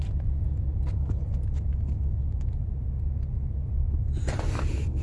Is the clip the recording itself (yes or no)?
yes